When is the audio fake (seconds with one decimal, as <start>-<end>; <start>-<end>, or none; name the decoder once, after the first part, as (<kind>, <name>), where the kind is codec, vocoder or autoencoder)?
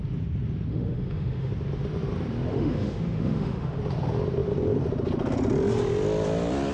0.7-1.5 (autoencoder, DAC-VAE); 2.5-3.8